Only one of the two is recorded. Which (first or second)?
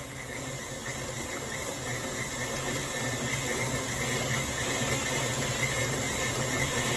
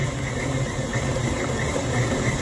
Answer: first